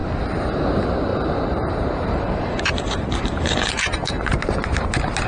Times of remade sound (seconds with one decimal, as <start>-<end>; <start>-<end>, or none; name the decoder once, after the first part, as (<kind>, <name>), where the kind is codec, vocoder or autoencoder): 1.1-4.3 (vocoder, BigVGAN v2)